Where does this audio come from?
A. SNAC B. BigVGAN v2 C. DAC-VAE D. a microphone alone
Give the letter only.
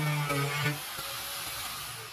D